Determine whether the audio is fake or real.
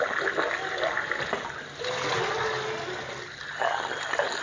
real